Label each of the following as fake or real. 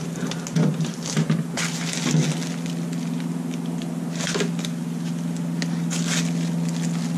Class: real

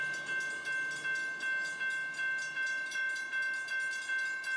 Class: real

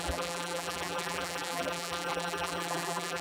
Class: fake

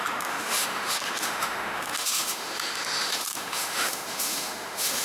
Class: fake